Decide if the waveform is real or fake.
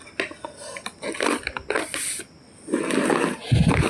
real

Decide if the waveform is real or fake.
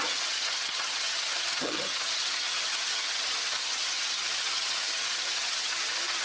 fake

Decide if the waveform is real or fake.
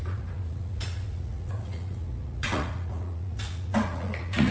fake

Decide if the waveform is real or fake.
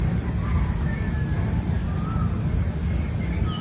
real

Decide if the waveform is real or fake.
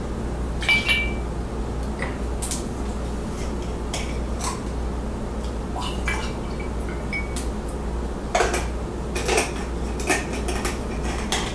real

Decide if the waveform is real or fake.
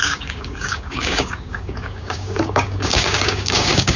fake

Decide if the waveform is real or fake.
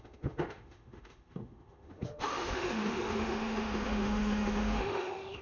fake